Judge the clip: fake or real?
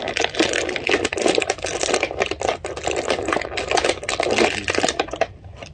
real